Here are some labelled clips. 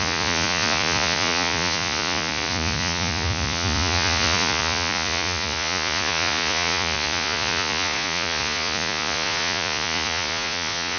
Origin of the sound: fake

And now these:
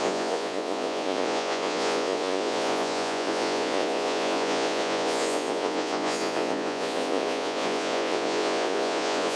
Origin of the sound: fake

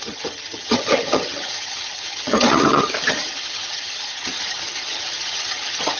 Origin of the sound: fake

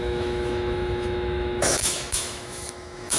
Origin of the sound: fake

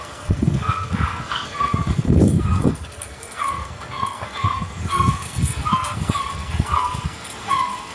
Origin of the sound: fake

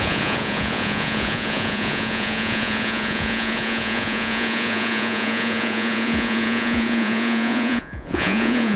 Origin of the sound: fake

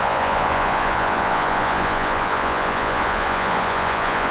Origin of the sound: fake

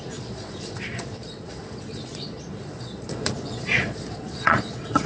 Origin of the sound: fake